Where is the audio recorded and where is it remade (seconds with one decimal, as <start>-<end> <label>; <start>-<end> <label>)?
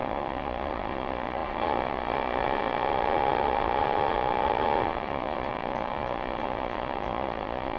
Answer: 0.0-7.8 remade